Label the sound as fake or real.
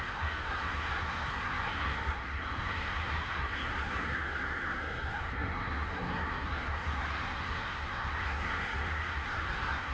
fake